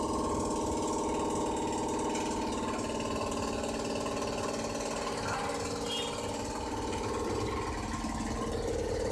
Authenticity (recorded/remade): recorded